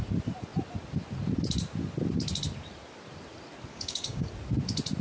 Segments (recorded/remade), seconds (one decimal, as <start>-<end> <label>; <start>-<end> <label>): 0.0-3.7 recorded; 3.7-4.3 remade; 4.3-5.0 recorded